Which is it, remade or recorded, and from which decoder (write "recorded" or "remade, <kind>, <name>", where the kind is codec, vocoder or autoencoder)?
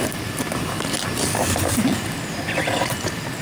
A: recorded